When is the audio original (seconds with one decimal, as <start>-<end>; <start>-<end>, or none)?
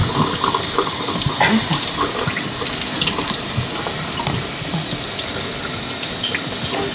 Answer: 0.0-6.9